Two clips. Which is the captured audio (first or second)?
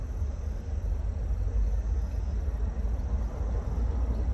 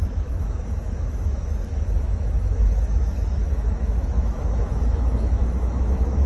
first